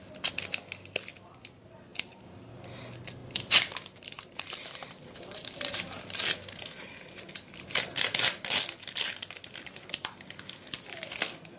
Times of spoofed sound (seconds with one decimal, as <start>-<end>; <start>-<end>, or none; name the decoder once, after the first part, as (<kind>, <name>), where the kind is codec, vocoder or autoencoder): 1.9-2.5 (vocoder, BigVGAN v2); 3.2-5.7